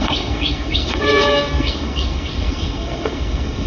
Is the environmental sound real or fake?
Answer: fake